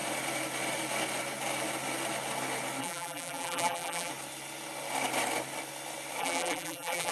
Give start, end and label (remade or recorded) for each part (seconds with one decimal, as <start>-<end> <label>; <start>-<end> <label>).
0.0-2.8 recorded; 2.8-4.1 remade; 4.1-6.2 recorded; 6.2-7.1 remade